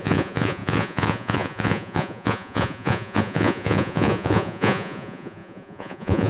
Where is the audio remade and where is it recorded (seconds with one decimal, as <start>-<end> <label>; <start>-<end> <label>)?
0.0-6.3 remade

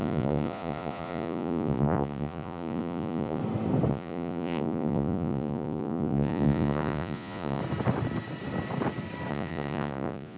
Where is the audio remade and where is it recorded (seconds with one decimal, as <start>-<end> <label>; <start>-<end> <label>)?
0.0-3.4 remade; 3.4-3.9 recorded; 3.9-7.6 remade; 7.6-9.3 recorded; 9.3-10.4 remade

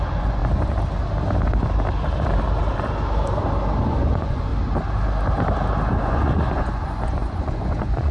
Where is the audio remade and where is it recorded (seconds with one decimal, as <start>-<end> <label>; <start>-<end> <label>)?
0.0-0.4 remade; 0.4-3.8 recorded; 3.8-4.5 remade; 4.5-6.0 recorded; 6.0-8.1 remade

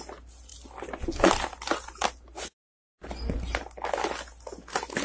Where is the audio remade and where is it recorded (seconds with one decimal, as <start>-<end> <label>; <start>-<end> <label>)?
0.0-5.0 recorded

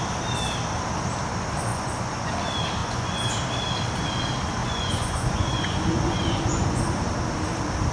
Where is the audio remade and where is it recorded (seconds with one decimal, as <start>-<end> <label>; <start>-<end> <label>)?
0.0-1.7 recorded; 1.7-2.3 remade; 2.3-2.8 recorded; 2.8-3.3 remade; 3.3-4.6 recorded; 4.6-6.8 remade; 6.8-7.9 recorded

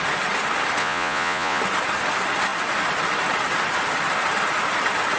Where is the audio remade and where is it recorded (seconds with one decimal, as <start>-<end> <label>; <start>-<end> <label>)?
0.0-0.8 recorded; 0.8-1.6 remade; 1.6-5.2 recorded

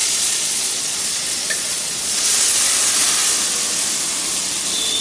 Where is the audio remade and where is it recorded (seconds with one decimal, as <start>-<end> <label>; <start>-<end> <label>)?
0.0-2.4 remade; 2.4-5.0 recorded

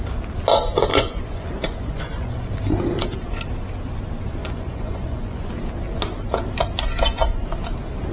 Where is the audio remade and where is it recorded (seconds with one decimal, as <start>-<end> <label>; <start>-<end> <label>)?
0.0-0.9 recorded; 0.9-2.5 remade; 2.5-4.4 recorded; 4.4-5.5 remade; 5.5-8.1 recorded